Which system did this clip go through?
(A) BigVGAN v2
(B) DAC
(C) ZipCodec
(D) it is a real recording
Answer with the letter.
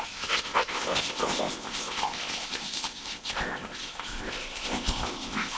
C